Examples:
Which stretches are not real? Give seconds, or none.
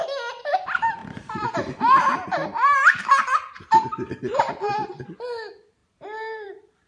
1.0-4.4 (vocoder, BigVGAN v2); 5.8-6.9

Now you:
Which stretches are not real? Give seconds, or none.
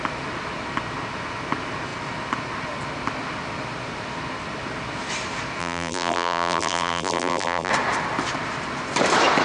5.6-7.7 (vocoder, BigVGAN v2)